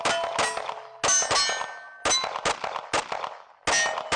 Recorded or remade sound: recorded